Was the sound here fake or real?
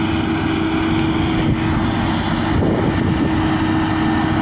real